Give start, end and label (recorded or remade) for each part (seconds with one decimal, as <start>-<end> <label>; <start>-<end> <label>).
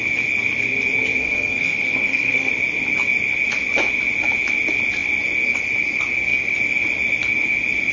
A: 0.0-1.2 recorded; 1.2-2.5 remade; 2.5-7.9 recorded